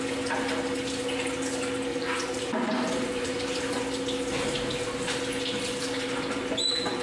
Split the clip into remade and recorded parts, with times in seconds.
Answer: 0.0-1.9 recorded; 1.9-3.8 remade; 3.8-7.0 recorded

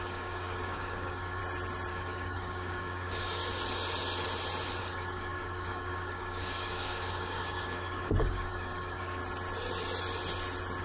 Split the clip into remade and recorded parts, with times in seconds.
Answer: 0.0-1.4 remade; 1.4-1.9 recorded; 1.9-3.4 remade; 3.4-4.8 recorded; 4.8-9.2 remade; 9.2-10.8 recorded